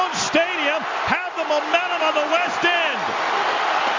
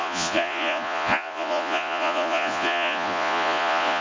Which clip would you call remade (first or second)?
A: second